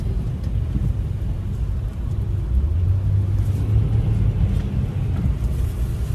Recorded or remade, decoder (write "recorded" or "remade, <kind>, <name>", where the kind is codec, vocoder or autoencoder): recorded